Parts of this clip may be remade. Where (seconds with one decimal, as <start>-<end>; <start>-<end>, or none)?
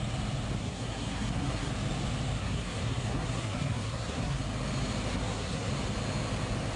0.6-1.7; 2.4-4.4; 5.1-5.7